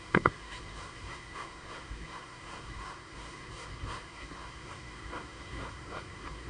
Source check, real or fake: fake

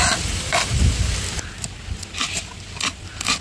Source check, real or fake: real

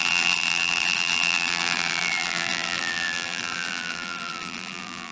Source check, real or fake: fake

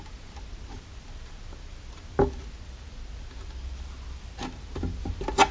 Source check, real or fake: real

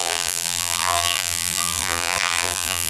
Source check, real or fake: fake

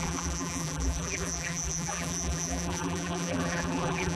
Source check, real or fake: fake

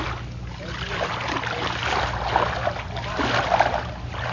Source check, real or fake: real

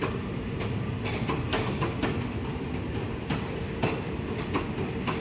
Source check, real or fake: real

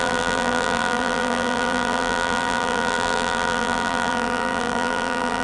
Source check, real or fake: fake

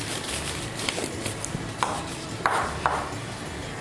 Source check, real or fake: fake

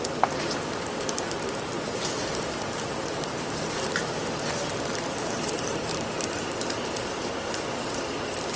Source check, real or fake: fake